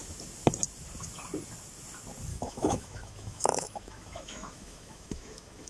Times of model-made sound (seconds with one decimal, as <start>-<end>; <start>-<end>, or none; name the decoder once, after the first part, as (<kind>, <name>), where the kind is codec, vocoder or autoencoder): 2.3-5.7 (autoencoder, DAC-VAE)